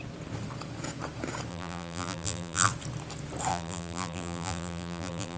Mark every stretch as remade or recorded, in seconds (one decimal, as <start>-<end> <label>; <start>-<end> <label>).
0.0-1.5 recorded; 1.5-2.7 remade; 2.7-3.5 recorded; 3.5-5.4 remade